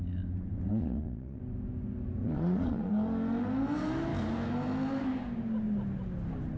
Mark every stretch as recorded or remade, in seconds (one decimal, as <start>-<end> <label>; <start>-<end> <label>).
0.0-0.7 recorded; 0.7-1.4 remade; 1.4-2.2 recorded; 2.2-2.9 remade; 2.9-6.6 recorded